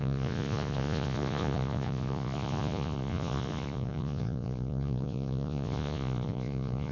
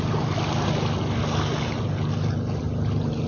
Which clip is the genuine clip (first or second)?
second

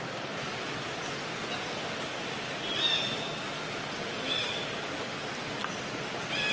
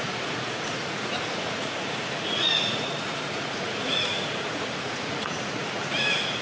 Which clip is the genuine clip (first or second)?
first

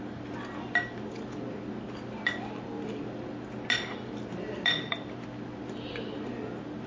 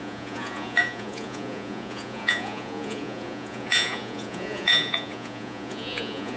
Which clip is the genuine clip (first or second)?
first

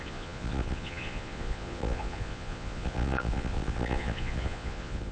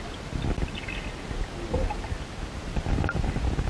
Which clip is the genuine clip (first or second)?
second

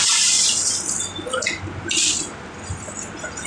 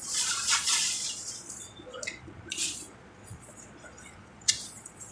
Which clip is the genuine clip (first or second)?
first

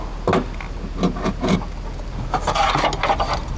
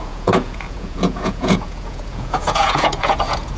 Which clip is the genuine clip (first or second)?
first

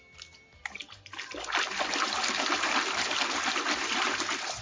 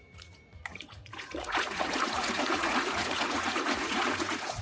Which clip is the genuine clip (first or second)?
first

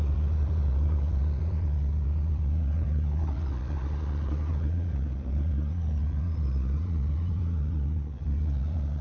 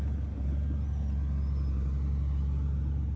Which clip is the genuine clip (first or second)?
second